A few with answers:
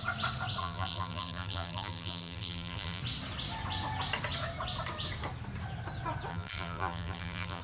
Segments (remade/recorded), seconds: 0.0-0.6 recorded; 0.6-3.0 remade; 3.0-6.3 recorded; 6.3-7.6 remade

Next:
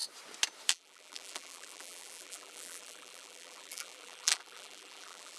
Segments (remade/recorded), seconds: 0.0-0.7 recorded; 0.7-5.4 remade

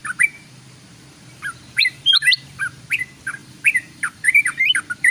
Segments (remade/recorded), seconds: 0.0-3.0 remade; 3.0-3.4 recorded; 3.4-5.1 remade

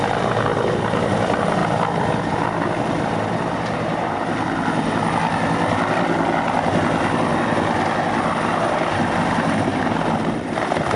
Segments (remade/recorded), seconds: 0.0-0.5 remade; 0.5-1.1 recorded; 1.1-1.6 remade; 1.6-2.3 recorded; 2.3-4.3 remade; 4.3-8.4 recorded; 8.4-11.0 remade

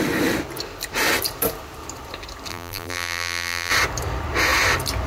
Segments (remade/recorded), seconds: 0.0-2.5 recorded; 2.5-3.7 remade; 3.7-5.1 recorded

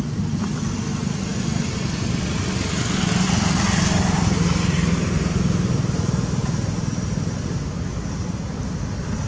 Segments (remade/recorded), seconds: 0.0-1.3 recorded; 1.3-2.8 remade; 2.8-9.3 recorded